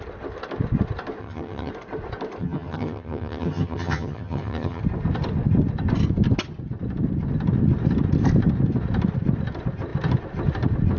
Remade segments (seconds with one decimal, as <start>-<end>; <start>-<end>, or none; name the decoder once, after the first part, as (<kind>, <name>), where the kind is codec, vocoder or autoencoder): 1.2-1.7 (vocoder, HiFi-GAN); 2.4-4.8